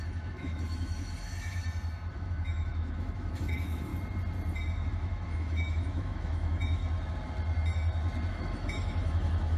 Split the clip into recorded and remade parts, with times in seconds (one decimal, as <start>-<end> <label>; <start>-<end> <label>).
0.0-1.6 remade; 1.6-2.1 recorded; 2.1-3.9 remade; 3.9-4.9 recorded; 4.9-6.8 remade; 6.8-8.3 recorded; 8.3-9.6 remade